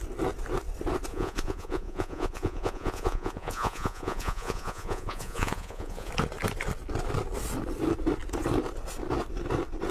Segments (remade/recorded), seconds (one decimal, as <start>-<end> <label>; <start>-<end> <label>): 0.0-1.1 recorded; 1.1-6.1 remade; 6.1-9.9 recorded